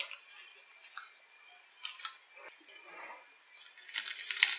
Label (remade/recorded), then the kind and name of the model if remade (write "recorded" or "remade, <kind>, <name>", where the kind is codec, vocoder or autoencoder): recorded